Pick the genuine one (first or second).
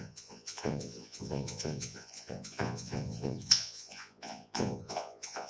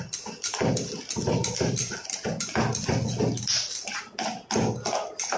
second